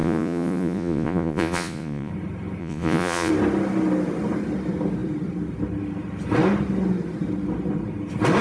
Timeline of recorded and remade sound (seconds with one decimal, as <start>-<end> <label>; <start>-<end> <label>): 0.0-2.1 remade; 2.1-2.6 recorded; 2.6-3.3 remade; 3.3-8.4 recorded